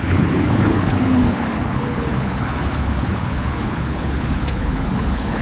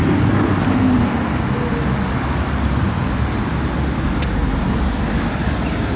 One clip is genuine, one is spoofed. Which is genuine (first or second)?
second